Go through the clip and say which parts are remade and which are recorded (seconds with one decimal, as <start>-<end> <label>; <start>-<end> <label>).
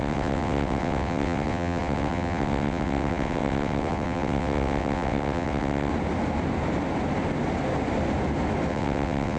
0.0-5.9 remade; 5.9-8.7 recorded; 8.7-9.4 remade